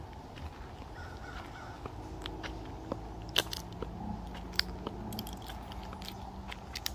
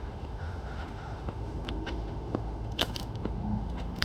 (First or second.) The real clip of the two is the first